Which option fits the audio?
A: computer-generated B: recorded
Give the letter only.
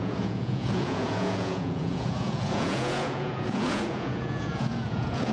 A